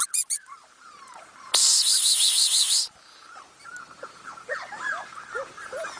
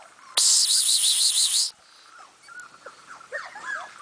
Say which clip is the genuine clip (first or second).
second